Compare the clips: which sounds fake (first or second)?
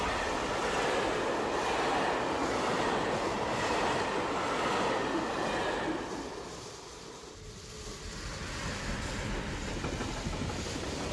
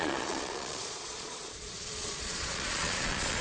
second